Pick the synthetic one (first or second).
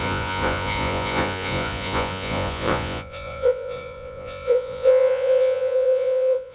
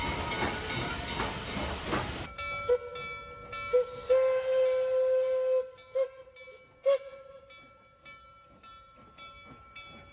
first